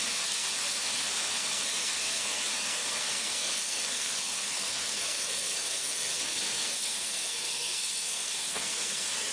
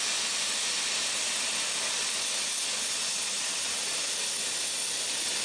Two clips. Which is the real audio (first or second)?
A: second